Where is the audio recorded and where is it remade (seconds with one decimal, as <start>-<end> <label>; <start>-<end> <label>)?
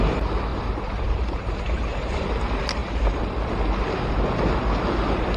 0.0-0.5 recorded; 0.5-2.3 remade; 2.3-2.8 recorded; 2.8-3.3 remade; 3.3-5.4 recorded